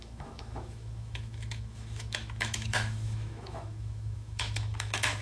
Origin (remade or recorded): remade